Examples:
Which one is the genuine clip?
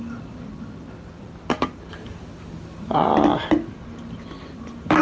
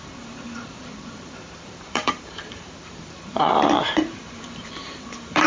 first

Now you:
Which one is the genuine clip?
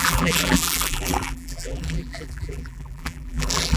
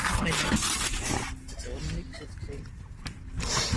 second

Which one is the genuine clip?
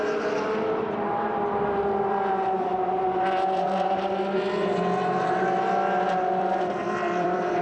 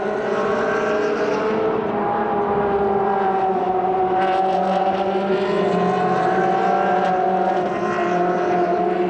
second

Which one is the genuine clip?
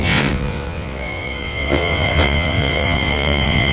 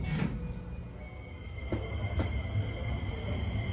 second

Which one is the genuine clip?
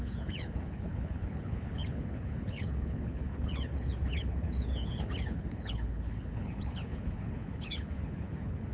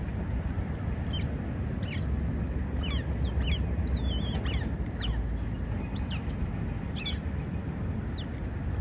second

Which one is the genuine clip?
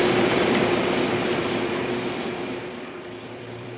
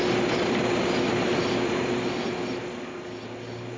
second